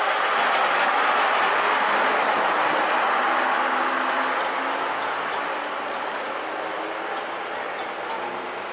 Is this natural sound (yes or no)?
yes